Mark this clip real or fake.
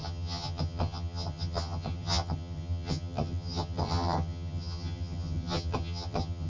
fake